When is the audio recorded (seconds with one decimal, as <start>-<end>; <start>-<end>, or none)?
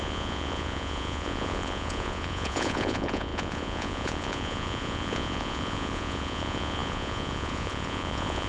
none